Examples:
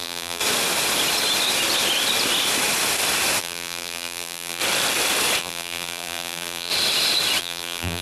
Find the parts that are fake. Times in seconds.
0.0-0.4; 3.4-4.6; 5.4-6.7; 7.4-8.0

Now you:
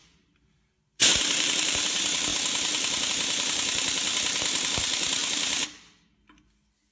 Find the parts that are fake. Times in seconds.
0.0-1.8

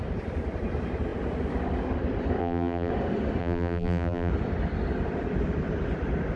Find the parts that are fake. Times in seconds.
2.4-2.9; 3.4-4.3

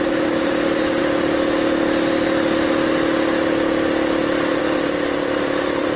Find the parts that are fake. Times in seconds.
0.0-1.0; 4.6-6.0

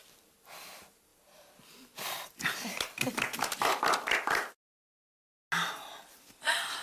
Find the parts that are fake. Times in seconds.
1.1-5.2

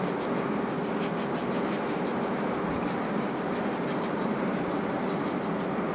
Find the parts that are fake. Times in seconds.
2.1-4.7

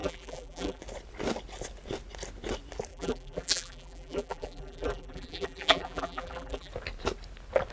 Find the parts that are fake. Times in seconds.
0.0-0.8; 2.9-6.7